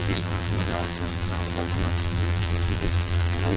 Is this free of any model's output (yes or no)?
no